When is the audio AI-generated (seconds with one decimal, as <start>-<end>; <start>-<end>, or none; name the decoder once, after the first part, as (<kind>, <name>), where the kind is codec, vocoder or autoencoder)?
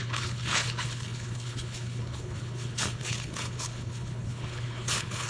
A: 0.0-5.3 (codec, HILCodec)